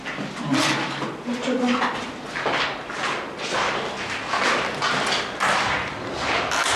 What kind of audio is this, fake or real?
real